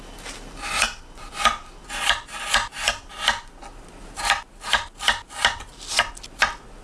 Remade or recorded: recorded